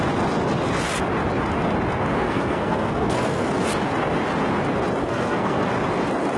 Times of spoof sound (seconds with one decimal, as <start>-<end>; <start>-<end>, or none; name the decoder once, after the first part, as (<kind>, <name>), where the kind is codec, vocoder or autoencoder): 2.2-3.5 (codec, SNAC); 5.0-5.7